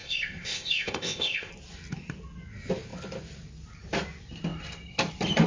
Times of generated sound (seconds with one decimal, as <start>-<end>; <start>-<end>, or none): 0.0-1.5

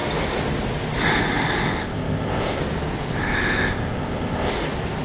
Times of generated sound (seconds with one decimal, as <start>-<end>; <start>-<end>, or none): 1.7-2.6; 3.2-4.5

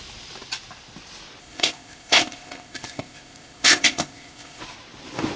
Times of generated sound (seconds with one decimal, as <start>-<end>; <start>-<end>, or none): 1.4-4.6

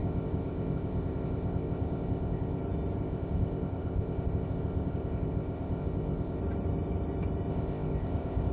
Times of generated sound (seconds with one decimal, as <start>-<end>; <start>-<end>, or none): 0.0-2.6; 3.0-6.4; 7.5-8.5